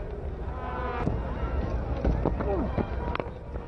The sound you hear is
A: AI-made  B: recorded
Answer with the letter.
B